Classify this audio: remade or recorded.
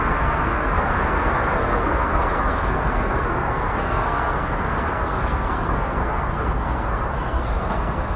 remade